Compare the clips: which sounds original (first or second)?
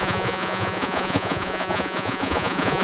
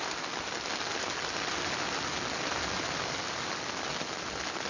second